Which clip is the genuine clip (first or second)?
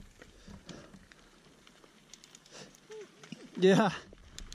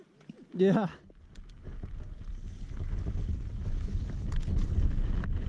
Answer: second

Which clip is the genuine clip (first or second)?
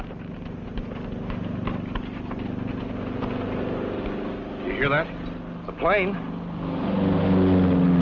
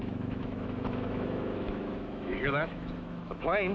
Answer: first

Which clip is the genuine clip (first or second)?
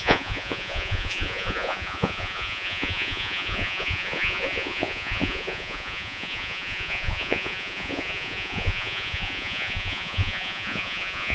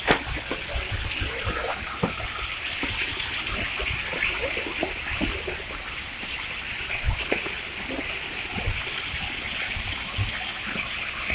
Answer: second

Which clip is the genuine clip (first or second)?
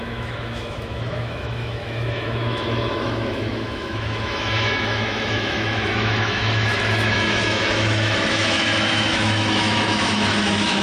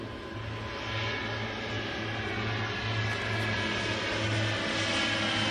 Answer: second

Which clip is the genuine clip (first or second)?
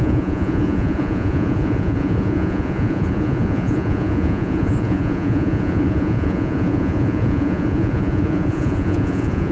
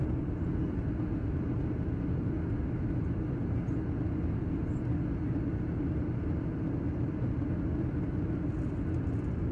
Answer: second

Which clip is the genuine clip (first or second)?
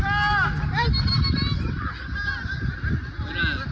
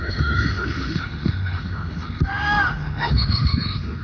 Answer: first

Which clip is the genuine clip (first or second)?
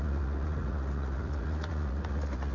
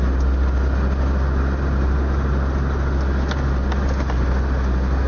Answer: second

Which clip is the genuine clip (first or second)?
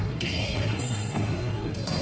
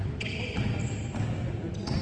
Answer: second